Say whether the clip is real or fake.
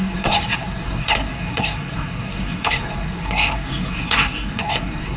fake